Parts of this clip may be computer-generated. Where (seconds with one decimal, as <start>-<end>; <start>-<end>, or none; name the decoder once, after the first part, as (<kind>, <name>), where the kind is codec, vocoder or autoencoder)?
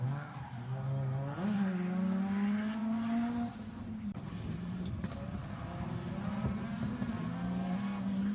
none